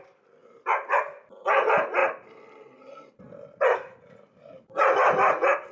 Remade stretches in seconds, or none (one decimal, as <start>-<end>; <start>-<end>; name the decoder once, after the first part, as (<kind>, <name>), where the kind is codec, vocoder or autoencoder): 2.0-5.7 (vocoder, BigVGAN v2)

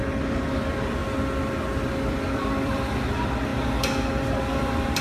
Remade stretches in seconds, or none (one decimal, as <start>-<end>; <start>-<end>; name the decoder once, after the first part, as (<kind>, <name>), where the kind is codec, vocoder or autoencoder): 0.0-1.0 (vocoder, BigVGAN v2); 1.9-3.5; 4.4-5.0

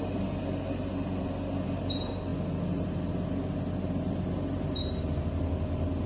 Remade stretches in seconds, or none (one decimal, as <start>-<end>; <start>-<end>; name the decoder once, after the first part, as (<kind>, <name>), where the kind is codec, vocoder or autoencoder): none

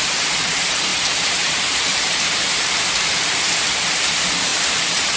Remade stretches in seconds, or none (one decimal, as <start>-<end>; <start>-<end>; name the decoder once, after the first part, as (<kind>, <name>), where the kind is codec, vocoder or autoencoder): 0.0-5.2 (vocoder, BigVGAN v2)

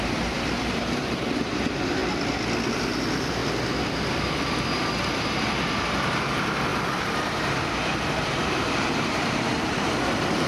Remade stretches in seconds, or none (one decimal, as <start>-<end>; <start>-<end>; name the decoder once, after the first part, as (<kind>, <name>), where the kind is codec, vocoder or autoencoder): 0.0-2.0 (vocoder, BigVGAN v2); 2.7-3.4; 4.9-10.5